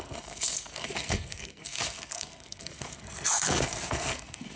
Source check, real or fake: fake